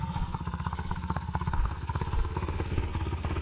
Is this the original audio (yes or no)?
no